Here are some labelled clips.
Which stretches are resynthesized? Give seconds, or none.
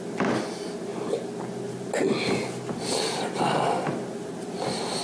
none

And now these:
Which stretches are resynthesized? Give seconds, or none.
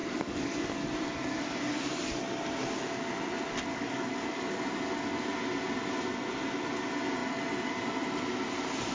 0.0-0.6 (codec, DAC); 3.7-4.6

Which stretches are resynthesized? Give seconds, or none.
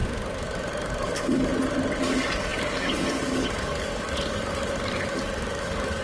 0.0-1.5 (codec, DAC); 2.0-6.0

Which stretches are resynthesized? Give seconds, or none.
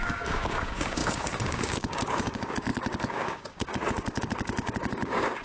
0.0-5.4 (codec, DAC)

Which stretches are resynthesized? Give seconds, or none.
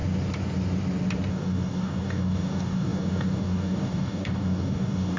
1.3-5.2 (codec, DAC)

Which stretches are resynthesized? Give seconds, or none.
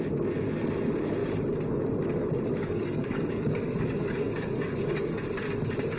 2.5-5.3 (codec, DAC)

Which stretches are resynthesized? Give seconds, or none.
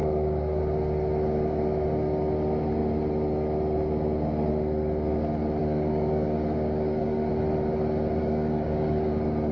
0.0-0.6 (codec, DAC); 5.6-7.3; 8.2-9.1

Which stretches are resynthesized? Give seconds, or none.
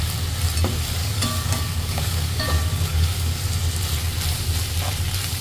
1.0-3.4 (codec, DAC)